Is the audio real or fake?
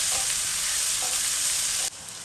fake